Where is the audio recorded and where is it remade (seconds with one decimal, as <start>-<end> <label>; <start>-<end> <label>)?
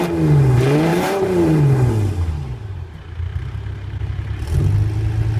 0.0-0.9 recorded; 0.9-1.9 remade; 1.9-3.3 recorded; 3.3-4.6 remade; 4.6-5.4 recorded